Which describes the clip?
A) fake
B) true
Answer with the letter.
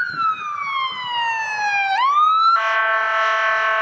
B